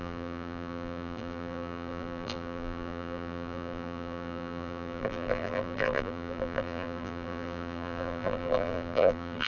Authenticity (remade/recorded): remade